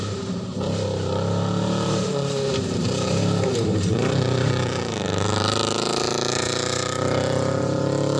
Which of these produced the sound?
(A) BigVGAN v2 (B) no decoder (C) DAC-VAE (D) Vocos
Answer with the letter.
A